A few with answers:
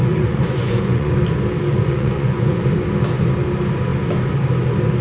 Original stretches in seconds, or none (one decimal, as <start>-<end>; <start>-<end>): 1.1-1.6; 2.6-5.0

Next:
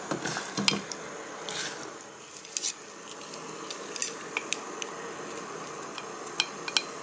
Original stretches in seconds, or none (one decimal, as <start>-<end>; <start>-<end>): 0.0-7.0

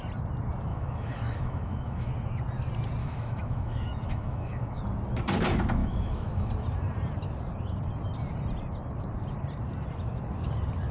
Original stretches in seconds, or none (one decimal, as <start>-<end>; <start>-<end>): 0.0-0.7; 2.1-3.0; 4.8-5.8; 6.5-10.9

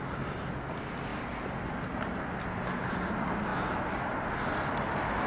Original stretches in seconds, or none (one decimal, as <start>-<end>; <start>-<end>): 0.0-5.3

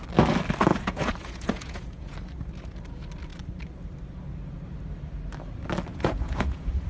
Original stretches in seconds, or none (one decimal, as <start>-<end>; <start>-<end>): 0.0-0.7; 2.1-5.9

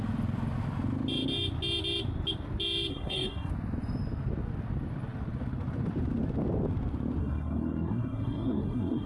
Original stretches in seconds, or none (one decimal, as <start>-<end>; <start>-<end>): 0.0-2.9; 3.5-7.2